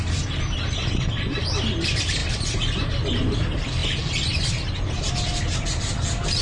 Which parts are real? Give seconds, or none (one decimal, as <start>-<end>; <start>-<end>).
0.0-3.8; 5.1-6.4

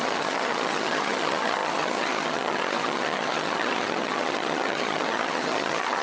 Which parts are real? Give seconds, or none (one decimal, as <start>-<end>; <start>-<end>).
none